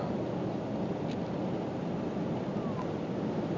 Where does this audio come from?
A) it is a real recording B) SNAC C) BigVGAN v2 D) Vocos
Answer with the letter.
A